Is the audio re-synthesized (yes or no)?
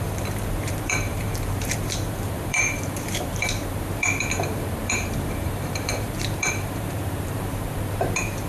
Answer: yes